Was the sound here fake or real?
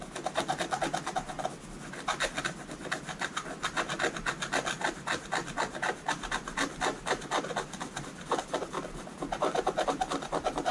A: real